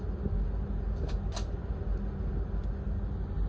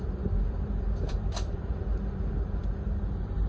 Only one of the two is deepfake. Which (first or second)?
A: second